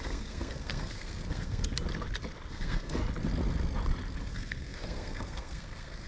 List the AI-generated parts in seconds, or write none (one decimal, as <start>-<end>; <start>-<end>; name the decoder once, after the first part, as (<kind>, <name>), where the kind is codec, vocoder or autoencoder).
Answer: 0.0-1.7 (codec, SNAC); 2.5-3.0; 4.2-6.1